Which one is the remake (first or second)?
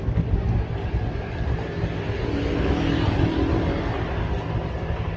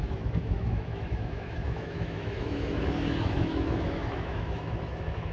second